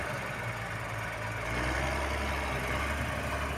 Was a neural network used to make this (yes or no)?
no